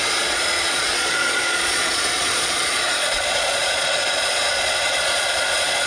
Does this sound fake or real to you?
fake